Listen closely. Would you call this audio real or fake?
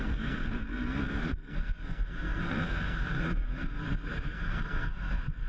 fake